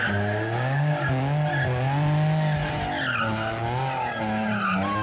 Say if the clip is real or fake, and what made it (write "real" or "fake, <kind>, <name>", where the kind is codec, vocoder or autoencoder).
real